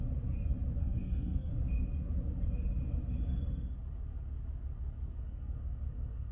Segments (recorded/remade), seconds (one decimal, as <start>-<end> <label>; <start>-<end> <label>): 0.0-0.8 recorded; 0.8-1.5 remade; 1.5-5.2 recorded; 5.2-6.3 remade